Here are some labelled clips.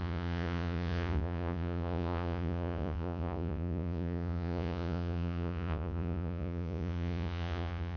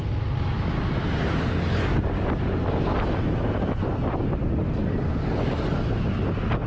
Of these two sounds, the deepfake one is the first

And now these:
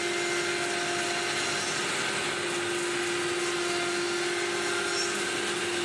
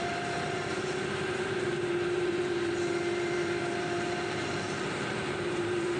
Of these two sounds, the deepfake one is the second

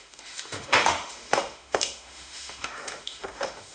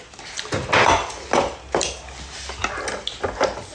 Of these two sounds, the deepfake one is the first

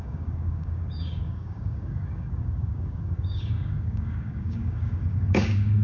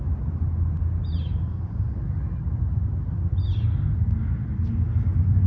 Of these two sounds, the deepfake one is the first